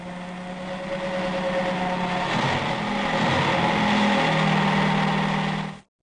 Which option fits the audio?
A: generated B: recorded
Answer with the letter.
B